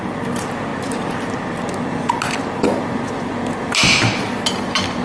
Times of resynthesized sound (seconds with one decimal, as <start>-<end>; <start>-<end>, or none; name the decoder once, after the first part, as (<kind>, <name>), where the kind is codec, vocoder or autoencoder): none